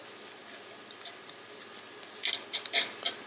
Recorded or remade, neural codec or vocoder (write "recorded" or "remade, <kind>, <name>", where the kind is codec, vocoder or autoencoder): recorded